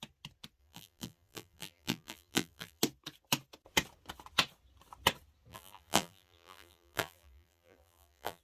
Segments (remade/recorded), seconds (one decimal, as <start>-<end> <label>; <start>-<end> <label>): 0.0-0.6 recorded; 0.6-2.8 remade; 2.8-5.5 recorded; 5.5-8.4 remade